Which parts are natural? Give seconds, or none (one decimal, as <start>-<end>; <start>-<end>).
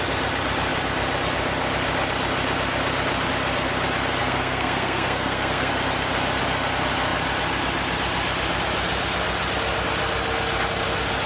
0.0-4.2; 5.7-11.3